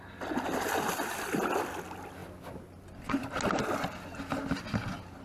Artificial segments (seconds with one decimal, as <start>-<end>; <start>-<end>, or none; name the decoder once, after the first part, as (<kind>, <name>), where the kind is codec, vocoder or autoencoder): none